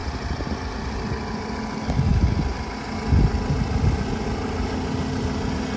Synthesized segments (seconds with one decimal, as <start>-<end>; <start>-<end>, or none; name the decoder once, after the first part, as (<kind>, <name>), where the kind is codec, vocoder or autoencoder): none